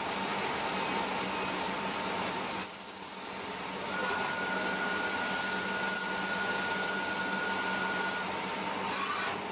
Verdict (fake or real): real